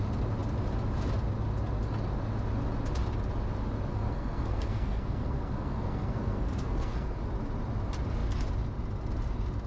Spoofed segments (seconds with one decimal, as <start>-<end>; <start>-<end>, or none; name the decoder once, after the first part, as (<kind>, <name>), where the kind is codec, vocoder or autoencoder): 3.9-7.2 (codec, SNAC)